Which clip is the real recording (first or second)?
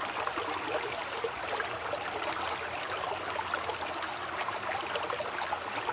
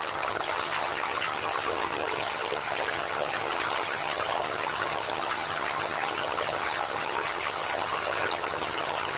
first